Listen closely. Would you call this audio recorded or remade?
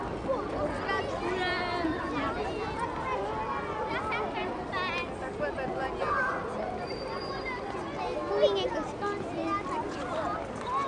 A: recorded